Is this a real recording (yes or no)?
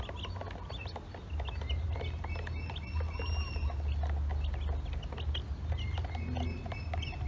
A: yes